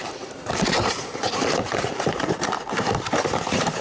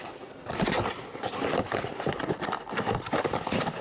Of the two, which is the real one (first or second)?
second